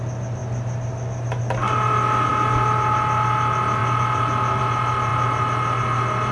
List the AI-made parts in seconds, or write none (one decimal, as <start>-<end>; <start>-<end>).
none